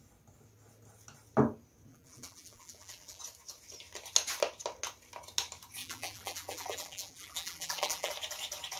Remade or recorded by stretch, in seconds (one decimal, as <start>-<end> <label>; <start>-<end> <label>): 0.0-1.9 recorded; 1.9-3.2 remade; 3.2-5.8 recorded; 5.8-8.1 remade; 8.1-8.8 recorded